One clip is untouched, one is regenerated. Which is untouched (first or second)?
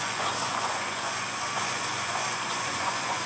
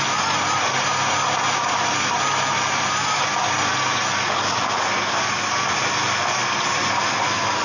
second